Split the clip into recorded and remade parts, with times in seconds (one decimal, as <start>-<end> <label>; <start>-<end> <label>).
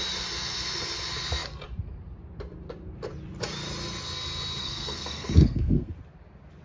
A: 0.0-4.6 recorded; 4.6-5.9 remade; 5.9-6.6 recorded